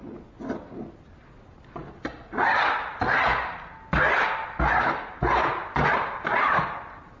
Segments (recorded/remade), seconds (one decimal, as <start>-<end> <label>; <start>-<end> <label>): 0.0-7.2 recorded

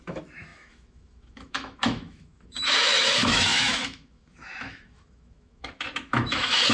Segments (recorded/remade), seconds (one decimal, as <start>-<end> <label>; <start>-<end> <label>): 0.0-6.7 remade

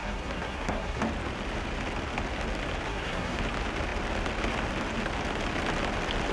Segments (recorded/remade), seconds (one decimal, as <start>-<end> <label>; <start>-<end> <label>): 0.0-1.0 remade; 1.0-2.9 recorded; 2.9-3.4 remade; 3.4-6.3 recorded